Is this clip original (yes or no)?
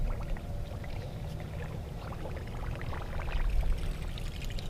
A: yes